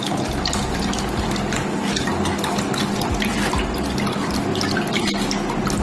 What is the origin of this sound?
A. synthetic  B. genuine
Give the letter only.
B